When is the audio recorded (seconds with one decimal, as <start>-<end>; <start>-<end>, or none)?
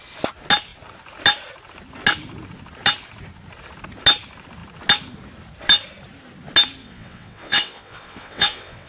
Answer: 0.0-6.8